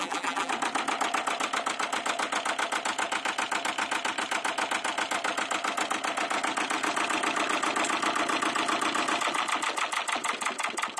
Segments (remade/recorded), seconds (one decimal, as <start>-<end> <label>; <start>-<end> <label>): 0.0-0.5 remade; 0.5-11.0 recorded